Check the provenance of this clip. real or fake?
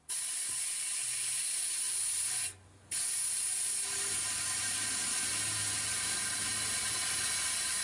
real